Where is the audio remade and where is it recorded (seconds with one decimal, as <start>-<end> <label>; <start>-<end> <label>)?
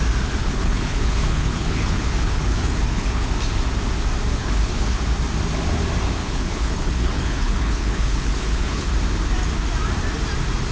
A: 0.0-0.4 recorded; 0.4-3.3 remade; 3.3-4.4 recorded; 4.4-5.0 remade; 5.0-6.2 recorded; 6.2-8.9 remade; 8.9-10.7 recorded